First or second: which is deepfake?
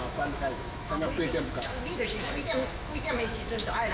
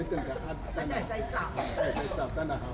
first